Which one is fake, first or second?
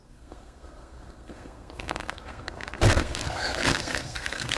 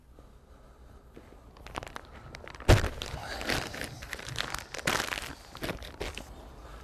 first